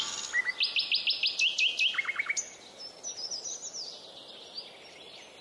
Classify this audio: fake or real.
real